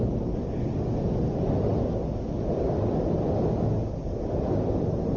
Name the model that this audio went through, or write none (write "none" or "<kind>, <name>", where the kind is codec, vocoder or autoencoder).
none